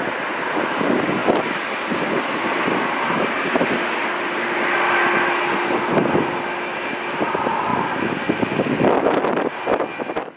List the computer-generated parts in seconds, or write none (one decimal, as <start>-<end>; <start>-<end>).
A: none